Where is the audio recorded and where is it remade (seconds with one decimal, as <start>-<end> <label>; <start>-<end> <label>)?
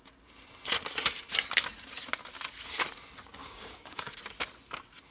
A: 0.0-3.4 recorded; 3.4-4.2 remade; 4.2-5.1 recorded